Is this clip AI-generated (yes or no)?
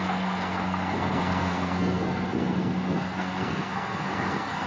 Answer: yes